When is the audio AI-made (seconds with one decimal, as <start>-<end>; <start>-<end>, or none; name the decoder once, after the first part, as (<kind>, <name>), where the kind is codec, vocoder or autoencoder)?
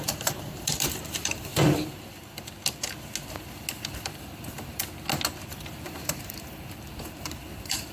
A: 0.0-1.5 (vocoder, BigVGAN v2); 3.8-4.8; 5.6-7.9